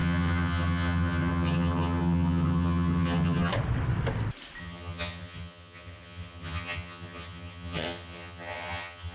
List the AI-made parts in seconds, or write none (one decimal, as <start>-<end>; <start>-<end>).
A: 0.0-3.5; 4.6-9.1